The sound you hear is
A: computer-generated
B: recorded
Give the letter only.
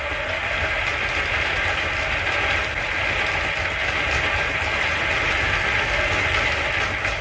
B